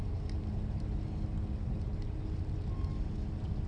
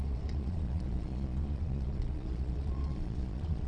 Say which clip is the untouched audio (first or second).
first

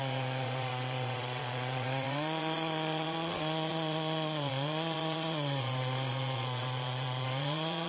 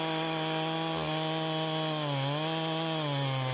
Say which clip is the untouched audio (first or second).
second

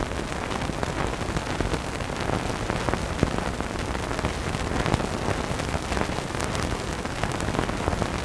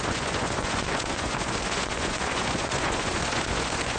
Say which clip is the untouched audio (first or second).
first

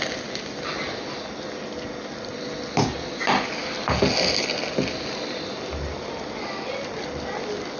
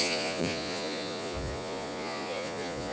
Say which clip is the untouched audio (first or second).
first